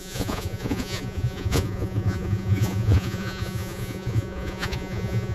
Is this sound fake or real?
fake